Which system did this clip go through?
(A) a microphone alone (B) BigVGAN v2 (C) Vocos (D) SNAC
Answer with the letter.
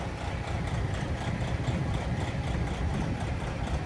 B